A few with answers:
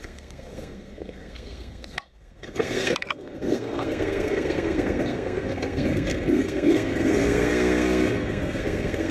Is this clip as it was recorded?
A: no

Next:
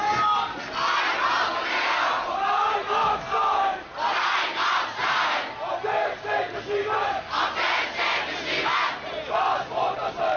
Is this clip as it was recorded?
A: yes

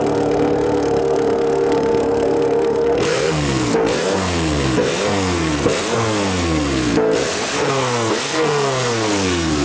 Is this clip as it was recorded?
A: no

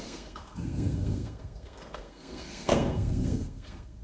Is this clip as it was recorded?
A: no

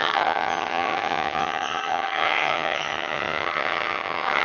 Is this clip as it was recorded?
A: no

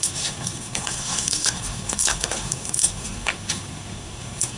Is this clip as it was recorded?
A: no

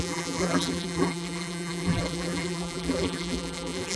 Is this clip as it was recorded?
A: no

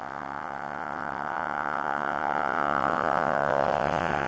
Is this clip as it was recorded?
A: no